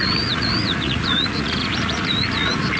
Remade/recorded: remade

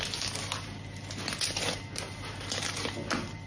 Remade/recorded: recorded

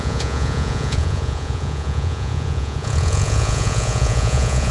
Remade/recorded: remade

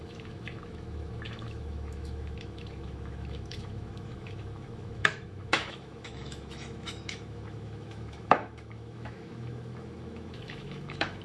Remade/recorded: remade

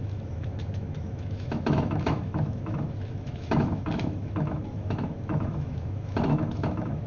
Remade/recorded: remade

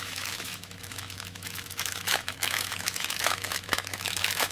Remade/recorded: remade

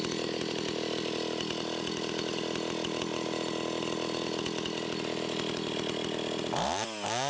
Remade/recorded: recorded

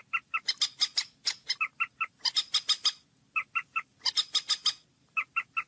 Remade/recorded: recorded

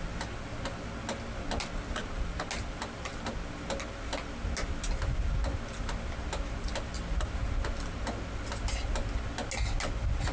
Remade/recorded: recorded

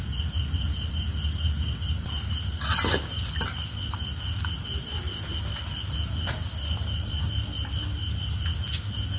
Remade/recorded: recorded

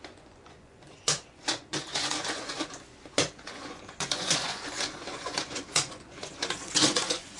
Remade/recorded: remade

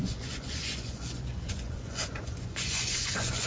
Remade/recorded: remade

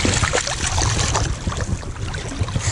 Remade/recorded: recorded